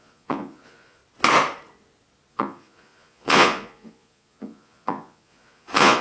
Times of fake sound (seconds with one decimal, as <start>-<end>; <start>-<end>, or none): 0.0-1.0; 2.3-6.0